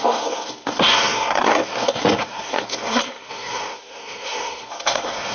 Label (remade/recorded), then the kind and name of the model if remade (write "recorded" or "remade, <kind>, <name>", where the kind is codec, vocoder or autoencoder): remade, codec, SNAC